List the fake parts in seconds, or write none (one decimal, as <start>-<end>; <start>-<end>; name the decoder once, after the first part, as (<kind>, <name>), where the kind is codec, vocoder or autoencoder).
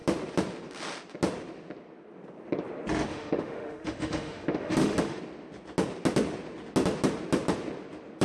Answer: 3.1-5.2 (autoencoder, DAC-VAE)